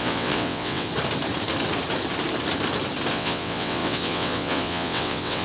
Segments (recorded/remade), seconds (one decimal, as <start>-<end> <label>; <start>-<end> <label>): 0.0-0.9 remade; 0.9-3.1 recorded; 3.1-5.4 remade